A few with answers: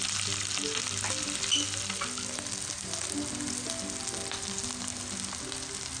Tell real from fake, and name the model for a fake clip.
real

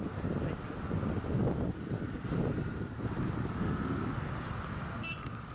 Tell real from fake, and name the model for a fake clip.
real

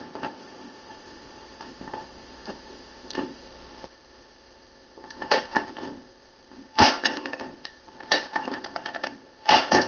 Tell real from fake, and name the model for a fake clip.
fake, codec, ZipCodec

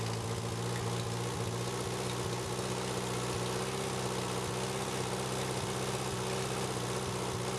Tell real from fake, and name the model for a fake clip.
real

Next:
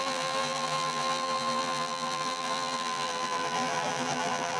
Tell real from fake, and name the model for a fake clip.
fake, vocoder, BigVGAN v2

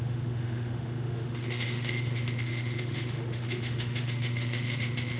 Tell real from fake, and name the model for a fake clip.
fake, autoencoder, DAC-VAE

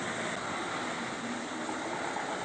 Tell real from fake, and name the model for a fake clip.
real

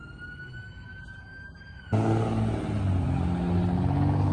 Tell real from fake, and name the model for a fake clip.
real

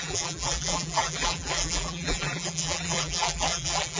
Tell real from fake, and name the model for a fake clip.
fake, vocoder, BigVGAN v2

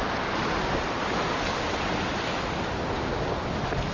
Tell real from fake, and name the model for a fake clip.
real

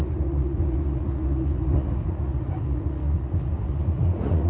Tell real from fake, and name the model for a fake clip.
fake, vocoder, Vocos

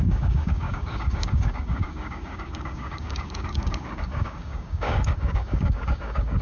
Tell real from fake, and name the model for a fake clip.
fake, codec, DAC